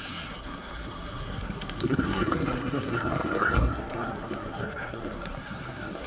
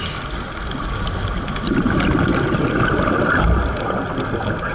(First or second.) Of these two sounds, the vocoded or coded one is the first